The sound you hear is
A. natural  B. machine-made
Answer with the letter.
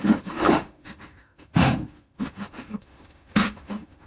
B